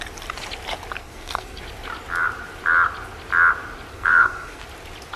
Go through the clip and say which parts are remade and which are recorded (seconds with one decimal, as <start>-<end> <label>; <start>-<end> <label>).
0.0-1.0 recorded; 1.0-1.6 remade; 1.6-3.9 recorded; 3.9-4.6 remade; 4.6-5.2 recorded